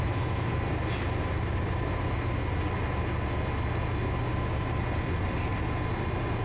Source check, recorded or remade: recorded